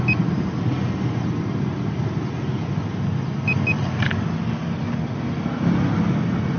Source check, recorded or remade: recorded